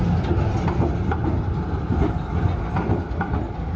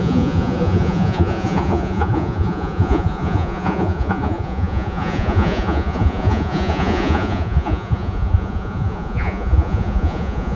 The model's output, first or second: second